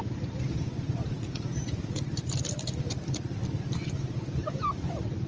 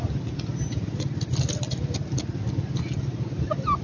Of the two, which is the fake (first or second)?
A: first